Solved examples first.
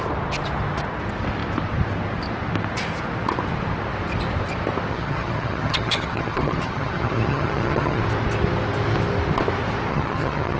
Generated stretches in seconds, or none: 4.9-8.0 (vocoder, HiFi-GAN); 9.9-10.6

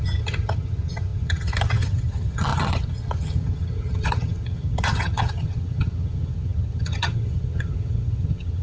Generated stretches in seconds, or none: 0.0-8.6 (vocoder, HiFi-GAN)